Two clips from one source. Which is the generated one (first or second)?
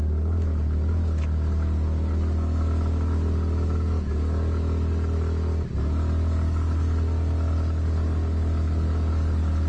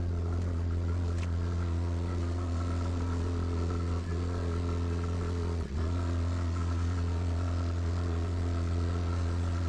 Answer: second